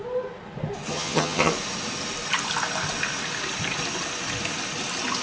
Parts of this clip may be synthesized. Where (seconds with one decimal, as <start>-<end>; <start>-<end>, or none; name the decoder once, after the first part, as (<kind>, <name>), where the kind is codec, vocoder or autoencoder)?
0.9-1.5 (vocoder, HiFi-GAN)